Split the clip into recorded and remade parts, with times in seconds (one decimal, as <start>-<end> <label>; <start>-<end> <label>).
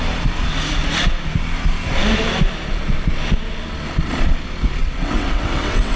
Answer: 0.0-4.8 recorded; 4.8-6.0 remade